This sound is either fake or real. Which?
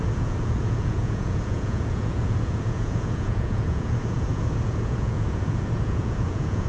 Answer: fake